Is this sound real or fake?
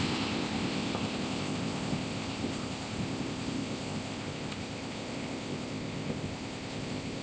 fake